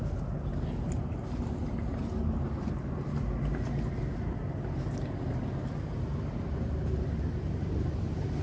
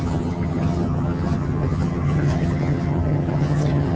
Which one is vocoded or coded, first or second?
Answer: second